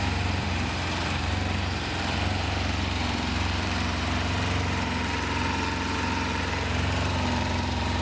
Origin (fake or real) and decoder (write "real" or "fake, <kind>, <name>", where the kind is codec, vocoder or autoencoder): fake, vocoder, BigVGAN v2